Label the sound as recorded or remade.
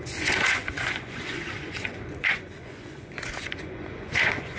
remade